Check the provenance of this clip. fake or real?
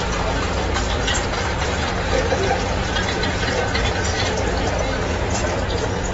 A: fake